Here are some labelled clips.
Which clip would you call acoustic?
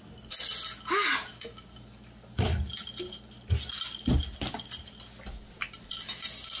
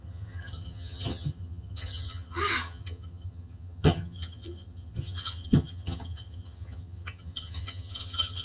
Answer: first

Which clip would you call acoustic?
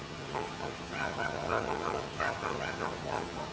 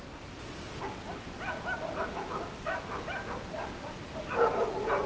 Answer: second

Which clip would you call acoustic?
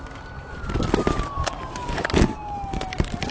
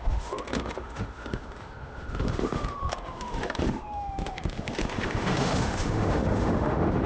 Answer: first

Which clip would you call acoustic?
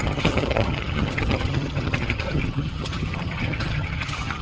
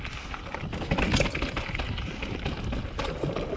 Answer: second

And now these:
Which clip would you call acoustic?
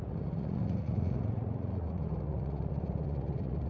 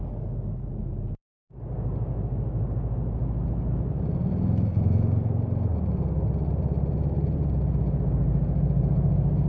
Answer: second